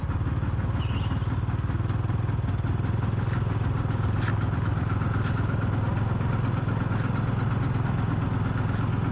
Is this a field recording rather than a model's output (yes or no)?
yes